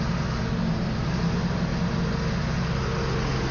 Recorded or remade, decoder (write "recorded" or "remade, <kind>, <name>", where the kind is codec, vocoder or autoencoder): recorded